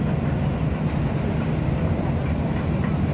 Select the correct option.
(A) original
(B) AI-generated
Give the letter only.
A